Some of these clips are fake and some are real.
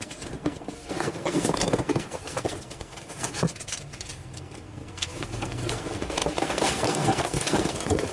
fake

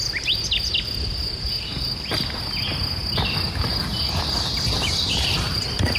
real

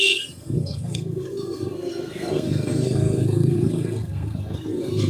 fake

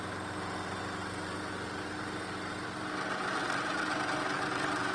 real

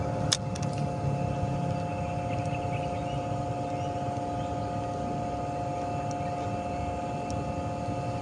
real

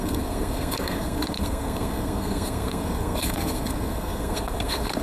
fake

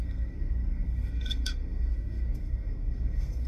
fake